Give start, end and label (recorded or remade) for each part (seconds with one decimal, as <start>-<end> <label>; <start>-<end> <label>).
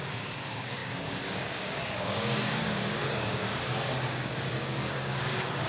0.0-5.7 remade